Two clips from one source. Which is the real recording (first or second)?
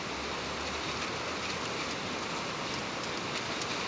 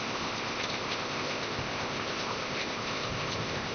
first